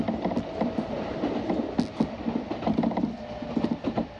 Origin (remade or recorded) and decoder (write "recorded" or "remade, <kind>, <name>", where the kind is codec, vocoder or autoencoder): recorded